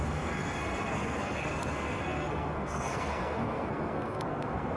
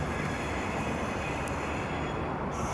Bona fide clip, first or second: second